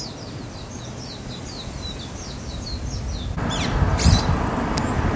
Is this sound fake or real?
real